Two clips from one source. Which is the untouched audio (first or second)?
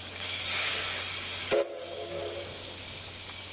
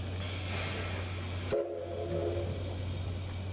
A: second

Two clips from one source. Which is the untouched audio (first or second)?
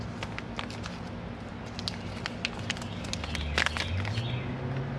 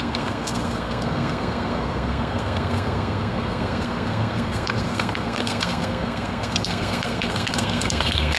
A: first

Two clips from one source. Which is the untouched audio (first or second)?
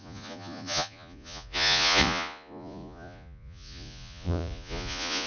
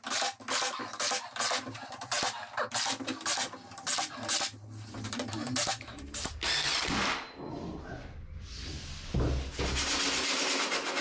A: second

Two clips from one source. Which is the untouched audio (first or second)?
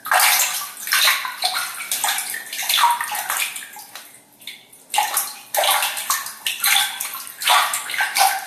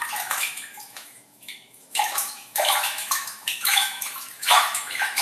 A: first